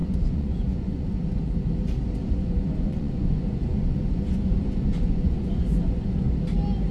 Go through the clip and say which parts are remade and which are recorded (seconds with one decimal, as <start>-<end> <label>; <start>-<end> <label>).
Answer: 0.0-1.4 remade; 1.4-2.2 recorded; 2.2-6.3 remade; 6.3-6.9 recorded